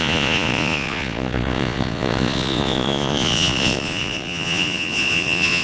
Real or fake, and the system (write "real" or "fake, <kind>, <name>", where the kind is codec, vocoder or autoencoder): fake, vocoder, Vocos